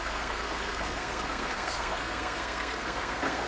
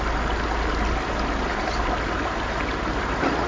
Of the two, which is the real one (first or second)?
second